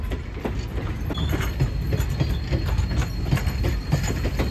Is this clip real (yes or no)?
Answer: yes